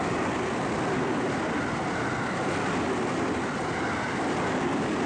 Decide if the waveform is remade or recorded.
recorded